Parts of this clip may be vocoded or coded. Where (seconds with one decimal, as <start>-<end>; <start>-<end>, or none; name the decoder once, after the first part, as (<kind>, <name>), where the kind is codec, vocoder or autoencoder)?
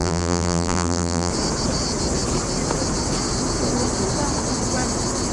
0.0-1.3 (vocoder, BigVGAN v2)